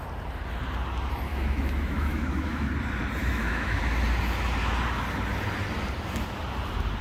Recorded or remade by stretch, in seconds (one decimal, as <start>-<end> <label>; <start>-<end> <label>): 0.0-1.3 recorded; 1.3-2.7 remade; 2.7-3.2 recorded; 3.2-3.8 remade; 3.8-7.0 recorded